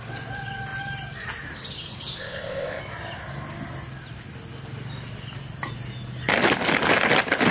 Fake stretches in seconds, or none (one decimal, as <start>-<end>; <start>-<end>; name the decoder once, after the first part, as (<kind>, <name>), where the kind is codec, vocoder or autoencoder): 2.2-2.8 (codec, ZipCodec)